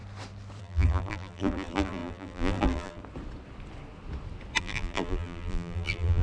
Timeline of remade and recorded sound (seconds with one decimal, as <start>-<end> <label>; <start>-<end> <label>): 0.0-0.6 recorded; 0.6-3.0 remade; 3.0-4.6 recorded; 4.6-6.2 remade